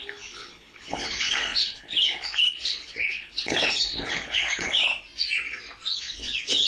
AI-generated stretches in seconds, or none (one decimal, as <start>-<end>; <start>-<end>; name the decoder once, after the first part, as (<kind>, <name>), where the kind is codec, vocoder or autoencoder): 0.0-4.9 (codec, HILCodec); 6.0-6.7